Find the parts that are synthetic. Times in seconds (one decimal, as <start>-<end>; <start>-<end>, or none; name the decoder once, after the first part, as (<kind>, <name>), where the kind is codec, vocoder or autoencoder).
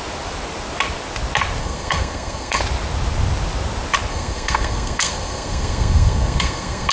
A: 1.6-2.6 (codec, SNAC); 4.1-6.9